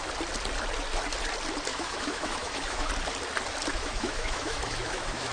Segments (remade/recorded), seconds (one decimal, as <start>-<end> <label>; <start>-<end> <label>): 0.0-1.7 recorded; 1.7-2.9 remade; 2.9-3.7 recorded; 3.7-5.3 remade